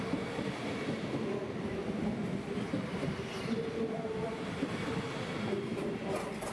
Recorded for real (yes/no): yes